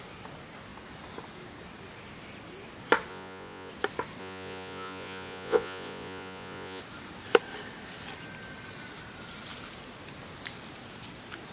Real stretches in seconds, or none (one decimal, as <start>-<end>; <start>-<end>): 0.0-3.1; 3.7-4.2; 6.8-11.5

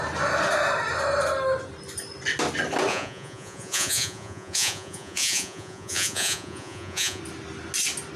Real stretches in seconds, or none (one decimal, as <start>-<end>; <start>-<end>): 0.0-2.9; 7.2-8.2

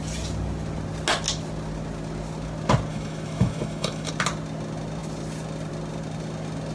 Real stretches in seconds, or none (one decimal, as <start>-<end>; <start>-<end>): 0.0-2.9; 4.1-6.7